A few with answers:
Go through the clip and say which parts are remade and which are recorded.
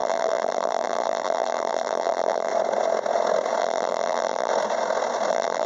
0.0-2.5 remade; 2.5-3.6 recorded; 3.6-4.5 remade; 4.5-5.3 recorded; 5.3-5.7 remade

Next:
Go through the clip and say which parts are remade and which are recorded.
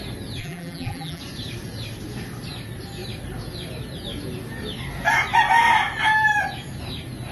0.0-0.4 recorded; 0.4-1.2 remade; 1.2-7.3 recorded